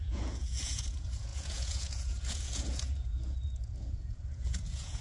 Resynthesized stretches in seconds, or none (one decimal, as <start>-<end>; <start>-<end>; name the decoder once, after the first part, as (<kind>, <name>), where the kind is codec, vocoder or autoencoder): 0.0-5.0 (vocoder, Vocos)